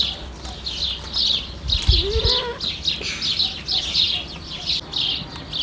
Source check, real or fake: real